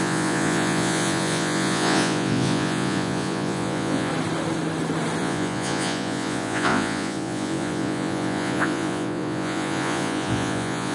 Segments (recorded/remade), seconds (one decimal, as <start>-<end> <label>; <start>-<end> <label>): 0.0-4.1 remade; 4.1-5.2 recorded; 5.2-10.9 remade